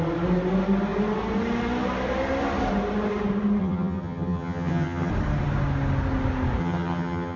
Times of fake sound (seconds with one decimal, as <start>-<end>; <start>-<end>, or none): 3.6-5.1; 6.6-7.4